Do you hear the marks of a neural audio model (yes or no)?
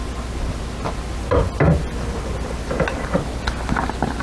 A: no